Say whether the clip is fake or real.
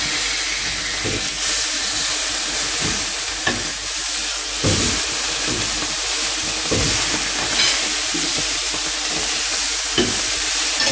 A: real